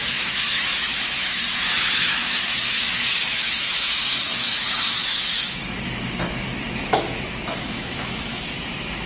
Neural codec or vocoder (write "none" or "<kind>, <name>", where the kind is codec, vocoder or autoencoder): autoencoder, DAC-VAE